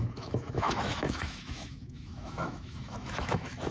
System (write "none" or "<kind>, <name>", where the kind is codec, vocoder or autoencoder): autoencoder, DAC-VAE